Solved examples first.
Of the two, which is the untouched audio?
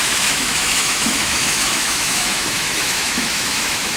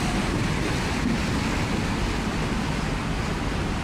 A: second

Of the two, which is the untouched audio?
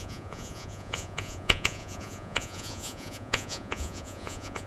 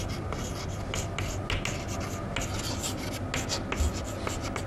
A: second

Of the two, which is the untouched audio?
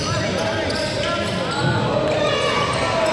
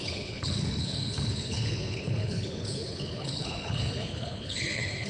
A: first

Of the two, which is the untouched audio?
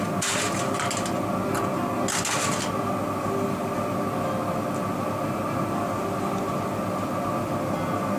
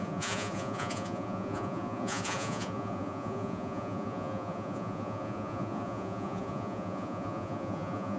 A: first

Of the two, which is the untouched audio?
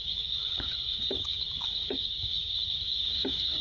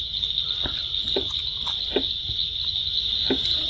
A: second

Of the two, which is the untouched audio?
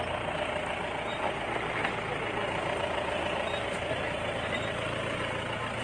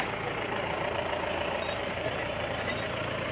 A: first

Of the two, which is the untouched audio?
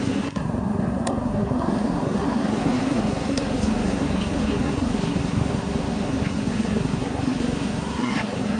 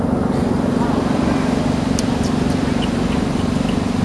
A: second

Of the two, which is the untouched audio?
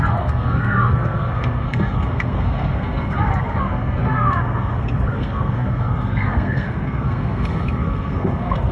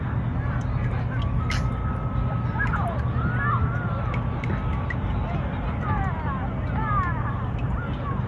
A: second